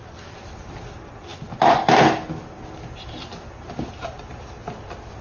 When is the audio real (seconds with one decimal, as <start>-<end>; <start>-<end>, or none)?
0.0-5.2